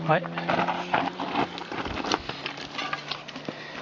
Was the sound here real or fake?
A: real